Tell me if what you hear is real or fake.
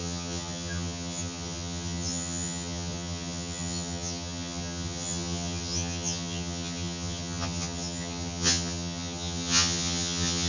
fake